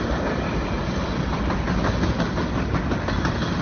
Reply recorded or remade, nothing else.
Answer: recorded